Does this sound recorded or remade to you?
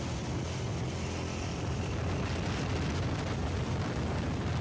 recorded